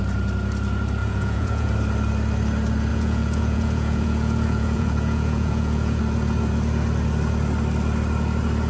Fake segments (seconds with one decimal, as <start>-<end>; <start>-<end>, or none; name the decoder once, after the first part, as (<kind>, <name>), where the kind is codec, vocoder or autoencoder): 1.0-1.7 (vocoder, Vocos); 2.9-6.0